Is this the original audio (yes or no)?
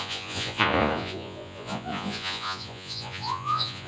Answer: no